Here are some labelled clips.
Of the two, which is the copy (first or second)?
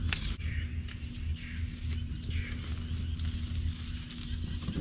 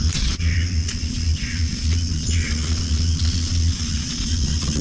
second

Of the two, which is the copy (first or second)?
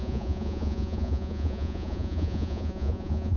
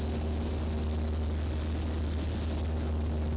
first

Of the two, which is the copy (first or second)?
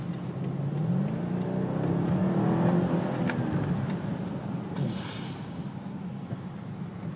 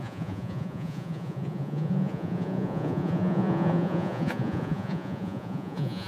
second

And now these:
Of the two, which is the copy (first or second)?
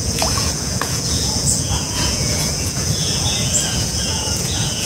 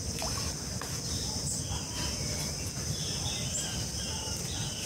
first